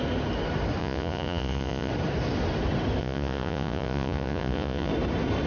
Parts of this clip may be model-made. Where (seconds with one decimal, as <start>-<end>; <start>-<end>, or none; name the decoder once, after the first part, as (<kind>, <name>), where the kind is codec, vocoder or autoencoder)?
0.8-1.9 (vocoder, Vocos); 3.0-4.9